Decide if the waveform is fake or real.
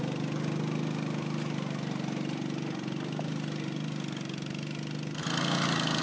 real